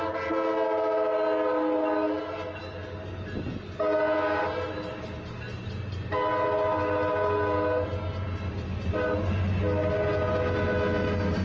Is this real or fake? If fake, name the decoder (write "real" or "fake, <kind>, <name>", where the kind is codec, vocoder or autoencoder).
real